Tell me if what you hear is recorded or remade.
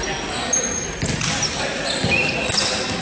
recorded